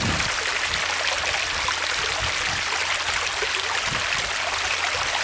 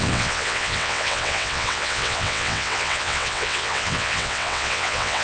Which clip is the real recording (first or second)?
first